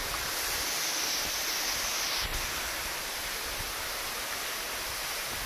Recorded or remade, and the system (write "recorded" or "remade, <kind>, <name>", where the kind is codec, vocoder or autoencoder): recorded